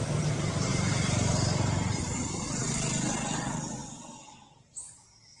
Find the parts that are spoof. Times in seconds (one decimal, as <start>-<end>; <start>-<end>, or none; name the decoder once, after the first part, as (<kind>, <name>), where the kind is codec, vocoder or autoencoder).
0.7-2.7 (vocoder, BigVGAN v2)